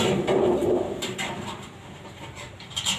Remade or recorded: remade